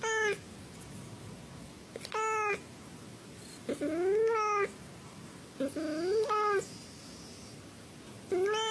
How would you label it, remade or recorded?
recorded